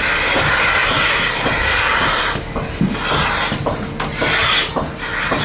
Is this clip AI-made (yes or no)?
no